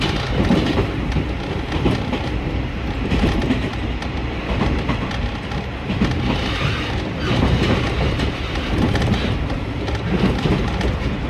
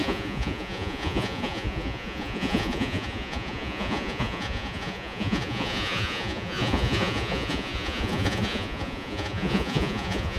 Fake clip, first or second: second